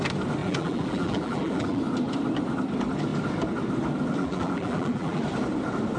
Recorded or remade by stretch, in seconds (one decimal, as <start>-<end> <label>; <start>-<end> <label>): 0.0-0.4 recorded; 0.4-1.8 remade; 1.8-4.2 recorded; 4.2-5.2 remade; 5.2-6.0 recorded